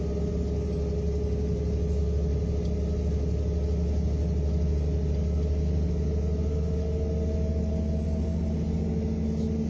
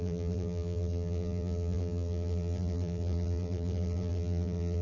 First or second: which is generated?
second